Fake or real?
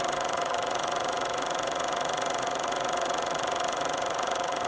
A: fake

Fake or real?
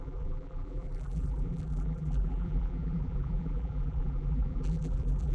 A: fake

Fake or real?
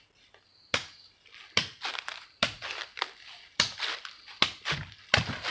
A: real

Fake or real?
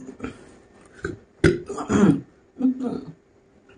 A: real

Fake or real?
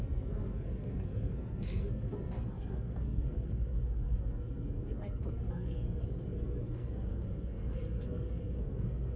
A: fake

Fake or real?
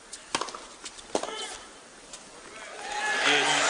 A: real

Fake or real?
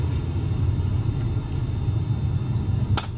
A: real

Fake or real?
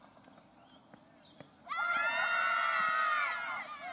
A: real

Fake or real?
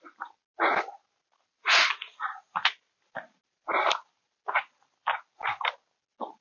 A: real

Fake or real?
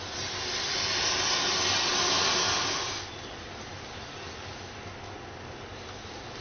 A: real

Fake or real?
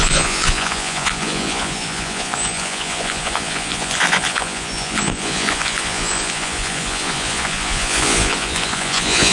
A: fake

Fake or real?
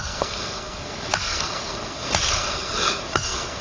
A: fake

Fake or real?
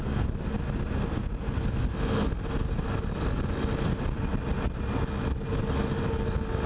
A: real